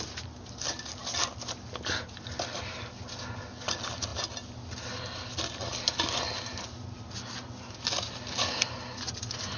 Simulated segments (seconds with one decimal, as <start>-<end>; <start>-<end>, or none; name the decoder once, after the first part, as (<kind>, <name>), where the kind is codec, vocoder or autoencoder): none